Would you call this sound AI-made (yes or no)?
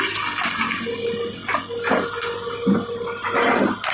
no